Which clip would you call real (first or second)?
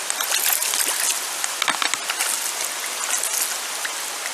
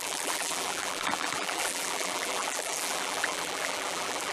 first